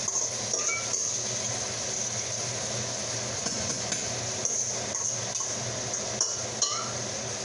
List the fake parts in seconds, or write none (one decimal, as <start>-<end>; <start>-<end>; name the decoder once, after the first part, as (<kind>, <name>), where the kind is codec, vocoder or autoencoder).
3.4-3.9 (vocoder, Vocos)